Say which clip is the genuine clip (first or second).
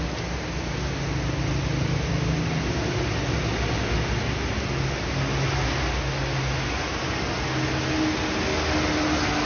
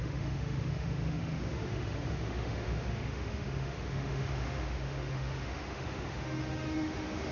first